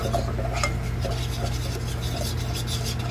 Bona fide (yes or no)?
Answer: yes